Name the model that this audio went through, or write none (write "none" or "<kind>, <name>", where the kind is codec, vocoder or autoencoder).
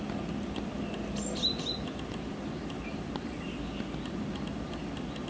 none